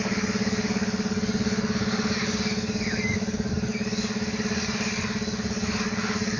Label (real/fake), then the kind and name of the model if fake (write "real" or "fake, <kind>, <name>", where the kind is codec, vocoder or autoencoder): fake, codec, DAC